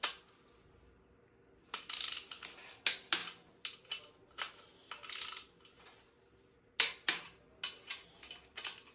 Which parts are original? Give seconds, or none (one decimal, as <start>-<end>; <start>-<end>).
0.0-8.9